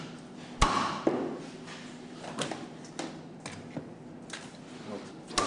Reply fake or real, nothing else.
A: real